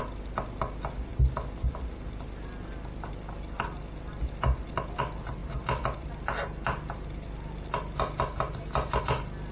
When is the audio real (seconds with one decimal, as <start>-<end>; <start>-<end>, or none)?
0.0-9.5